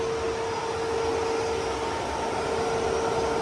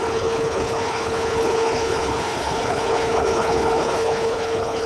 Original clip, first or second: first